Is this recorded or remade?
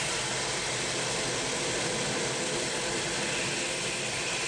recorded